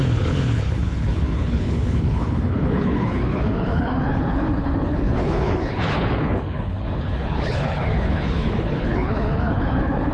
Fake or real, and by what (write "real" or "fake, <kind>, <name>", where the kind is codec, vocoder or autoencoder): fake, codec, HILCodec